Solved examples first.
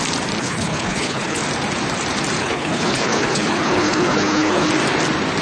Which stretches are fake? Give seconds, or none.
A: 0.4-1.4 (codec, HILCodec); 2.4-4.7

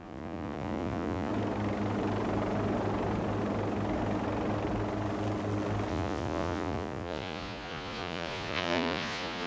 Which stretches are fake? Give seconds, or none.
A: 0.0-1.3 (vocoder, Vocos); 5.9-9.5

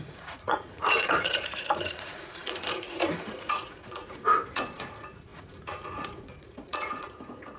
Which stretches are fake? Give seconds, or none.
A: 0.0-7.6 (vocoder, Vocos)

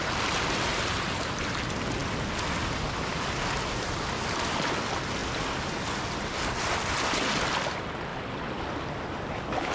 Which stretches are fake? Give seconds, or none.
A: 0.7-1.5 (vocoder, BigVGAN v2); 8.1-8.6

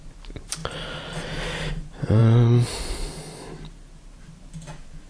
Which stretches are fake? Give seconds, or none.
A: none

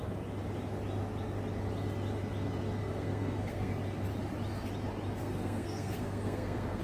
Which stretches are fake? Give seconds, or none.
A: 2.8-3.7 (codec, SNAC); 5.2-6.8

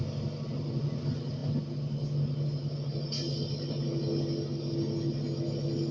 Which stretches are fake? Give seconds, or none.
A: none

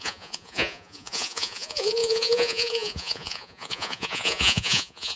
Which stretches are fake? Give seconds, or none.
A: 0.0-5.2 (vocoder, Vocos)